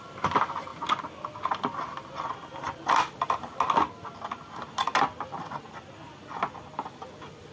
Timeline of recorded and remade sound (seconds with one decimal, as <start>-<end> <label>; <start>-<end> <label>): 0.0-7.5 recorded